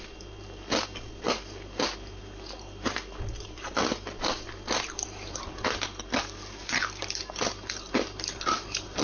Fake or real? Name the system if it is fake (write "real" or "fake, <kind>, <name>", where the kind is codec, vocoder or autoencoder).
real